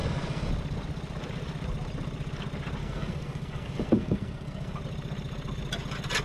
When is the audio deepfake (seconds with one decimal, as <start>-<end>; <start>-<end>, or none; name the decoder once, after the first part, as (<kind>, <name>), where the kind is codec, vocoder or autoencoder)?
0.0-0.5 (codec, SNAC); 2.8-4.8